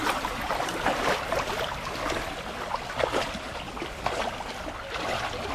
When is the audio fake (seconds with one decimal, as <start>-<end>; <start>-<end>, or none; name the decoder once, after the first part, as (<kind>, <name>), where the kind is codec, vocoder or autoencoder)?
none